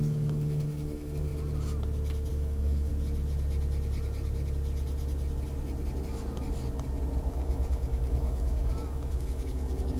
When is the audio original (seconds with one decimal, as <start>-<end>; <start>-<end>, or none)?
1.3-2.3; 2.9-7.3